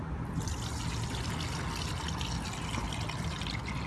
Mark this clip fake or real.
real